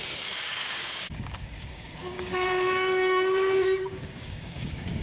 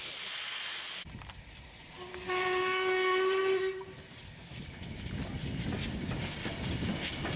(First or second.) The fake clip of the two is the first